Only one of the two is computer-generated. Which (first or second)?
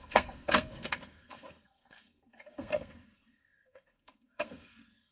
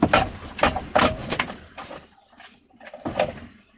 first